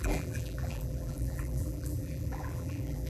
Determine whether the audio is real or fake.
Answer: fake